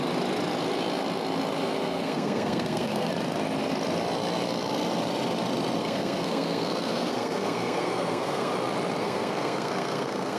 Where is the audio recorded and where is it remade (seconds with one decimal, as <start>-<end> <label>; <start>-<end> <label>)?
0.0-1.8 recorded; 1.8-3.1 remade; 3.1-5.8 recorded; 5.8-8.5 remade; 8.5-9.0 recorded; 9.0-10.4 remade